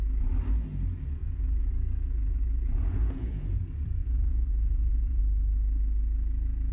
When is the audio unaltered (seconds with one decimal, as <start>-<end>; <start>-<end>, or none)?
0.0-1.2; 3.6-4.0; 5.2-6.7